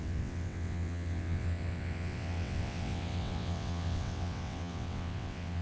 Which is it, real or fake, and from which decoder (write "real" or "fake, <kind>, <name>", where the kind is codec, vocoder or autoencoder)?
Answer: fake, vocoder, WaveNeXt